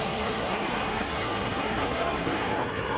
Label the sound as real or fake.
fake